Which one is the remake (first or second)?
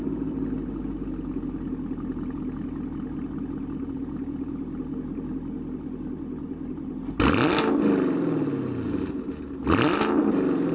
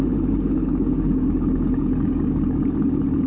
second